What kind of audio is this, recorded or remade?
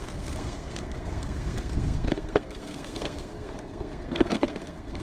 remade